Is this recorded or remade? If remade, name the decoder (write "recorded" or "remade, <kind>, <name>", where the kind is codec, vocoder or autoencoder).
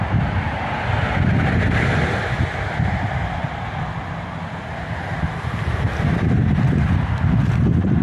recorded